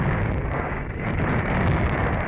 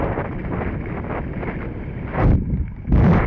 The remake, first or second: first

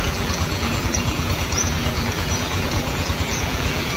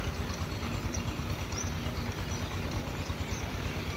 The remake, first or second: first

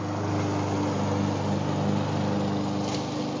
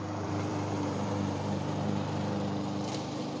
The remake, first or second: second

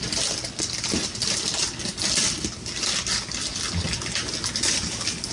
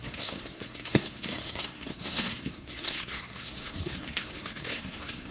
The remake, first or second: second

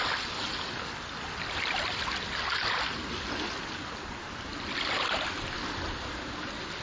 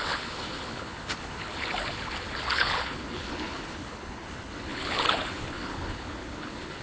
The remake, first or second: second